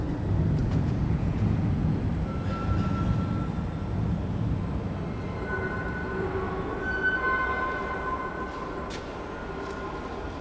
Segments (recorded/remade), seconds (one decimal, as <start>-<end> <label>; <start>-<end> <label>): 0.0-0.6 recorded; 0.6-2.1 remade; 2.1-10.4 recorded